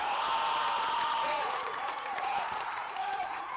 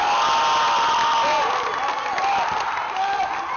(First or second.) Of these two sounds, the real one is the second